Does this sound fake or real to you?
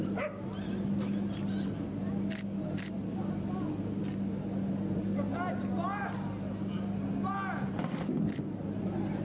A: real